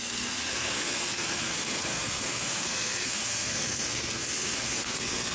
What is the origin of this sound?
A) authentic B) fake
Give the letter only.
B